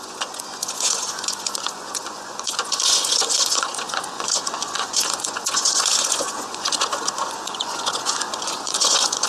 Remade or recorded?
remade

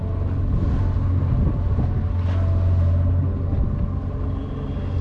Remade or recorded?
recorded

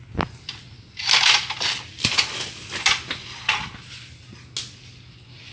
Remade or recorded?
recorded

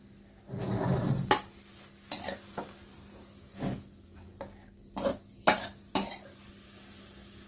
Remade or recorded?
recorded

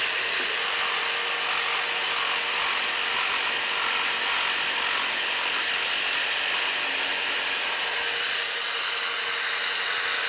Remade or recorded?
recorded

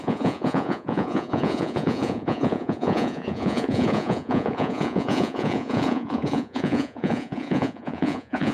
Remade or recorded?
remade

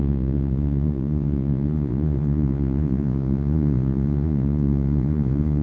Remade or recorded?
remade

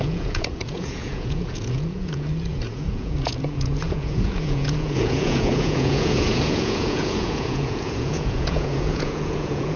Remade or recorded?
remade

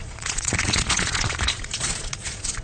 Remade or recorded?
remade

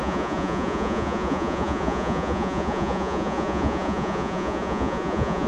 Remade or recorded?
remade